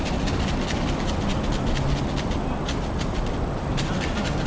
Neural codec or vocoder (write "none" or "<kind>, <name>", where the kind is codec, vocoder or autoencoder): none